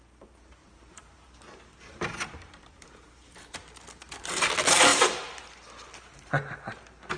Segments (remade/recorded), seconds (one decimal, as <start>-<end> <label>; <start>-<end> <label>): 0.0-0.6 recorded; 0.6-4.5 remade; 4.5-4.9 recorded; 4.9-5.7 remade; 5.7-7.2 recorded